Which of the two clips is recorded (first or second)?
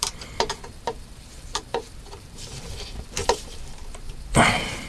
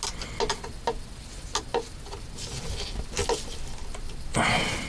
second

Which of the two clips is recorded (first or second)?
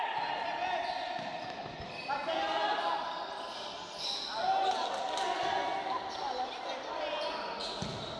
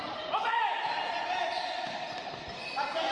first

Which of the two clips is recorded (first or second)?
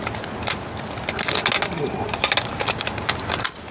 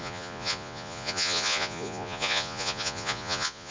first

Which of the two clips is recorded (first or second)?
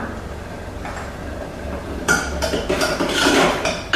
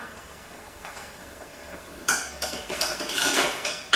first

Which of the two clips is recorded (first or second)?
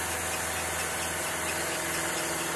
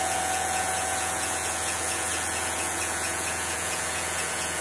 first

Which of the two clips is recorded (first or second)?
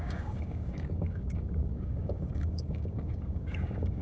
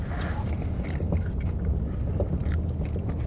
second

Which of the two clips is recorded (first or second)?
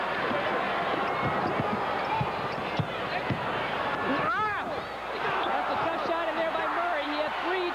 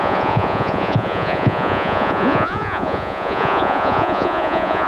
first